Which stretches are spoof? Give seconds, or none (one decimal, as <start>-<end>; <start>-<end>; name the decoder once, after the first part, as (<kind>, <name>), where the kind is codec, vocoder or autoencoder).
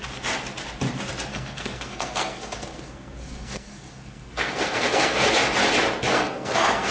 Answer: 1.3-5.3 (codec, SNAC); 6.1-6.9